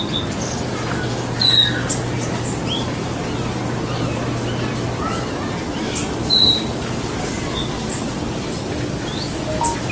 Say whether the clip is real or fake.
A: real